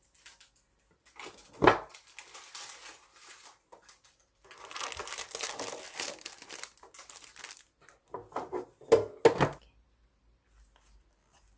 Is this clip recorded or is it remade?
recorded